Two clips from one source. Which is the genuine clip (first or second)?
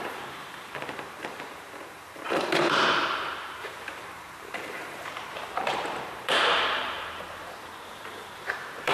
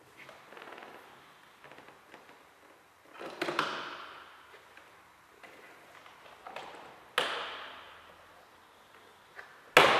second